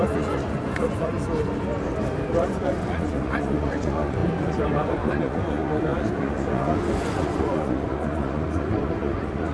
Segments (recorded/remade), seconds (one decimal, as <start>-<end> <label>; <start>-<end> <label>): 0.0-1.1 remade; 1.1-2.4 recorded; 2.4-9.5 remade